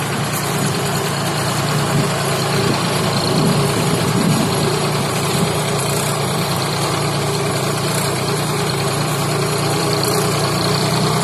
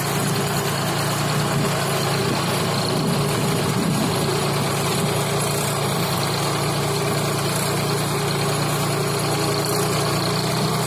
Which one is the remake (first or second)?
first